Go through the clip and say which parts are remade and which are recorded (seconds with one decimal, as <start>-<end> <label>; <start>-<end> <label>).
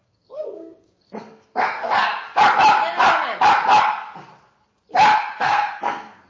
0.0-2.1 remade; 2.1-5.4 recorded; 5.4-6.3 remade